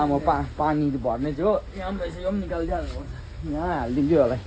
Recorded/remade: recorded